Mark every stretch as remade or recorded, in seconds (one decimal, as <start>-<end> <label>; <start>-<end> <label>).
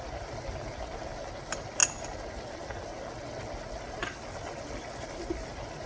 0.0-4.0 recorded; 4.0-5.5 remade; 5.5-5.9 recorded